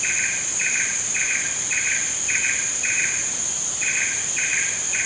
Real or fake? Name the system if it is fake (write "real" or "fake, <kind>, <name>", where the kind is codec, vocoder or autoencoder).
real